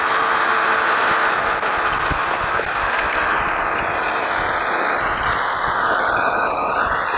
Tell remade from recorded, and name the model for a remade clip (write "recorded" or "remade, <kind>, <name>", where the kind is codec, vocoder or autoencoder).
recorded